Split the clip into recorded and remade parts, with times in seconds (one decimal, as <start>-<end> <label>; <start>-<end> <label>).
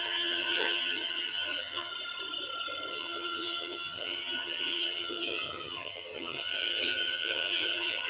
0.0-1.9 remade; 1.9-2.9 recorded; 2.9-8.1 remade